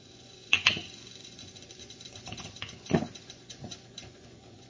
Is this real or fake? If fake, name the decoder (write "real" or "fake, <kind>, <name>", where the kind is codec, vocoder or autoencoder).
fake, vocoder, Vocos